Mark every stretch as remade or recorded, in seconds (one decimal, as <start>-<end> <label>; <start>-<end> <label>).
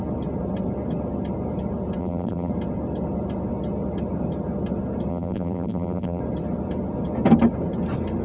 0.0-2.0 recorded; 2.0-2.5 remade; 2.5-5.1 recorded; 5.1-6.2 remade; 6.2-8.2 recorded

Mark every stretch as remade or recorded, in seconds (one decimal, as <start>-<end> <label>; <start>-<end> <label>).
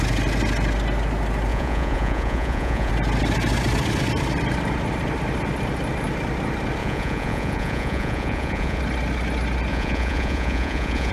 0.0-1.5 recorded; 1.5-2.9 remade; 2.9-6.8 recorded; 6.8-8.8 remade; 8.8-9.7 recorded; 9.7-11.1 remade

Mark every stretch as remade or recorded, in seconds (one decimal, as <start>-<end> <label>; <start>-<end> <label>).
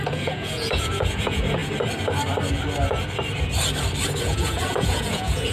0.0-1.6 remade; 1.6-4.2 recorded; 4.2-5.5 remade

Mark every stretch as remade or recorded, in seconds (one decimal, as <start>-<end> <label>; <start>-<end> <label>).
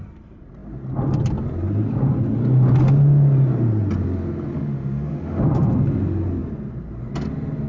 0.0-4.5 recorded; 4.5-5.4 remade; 5.4-7.7 recorded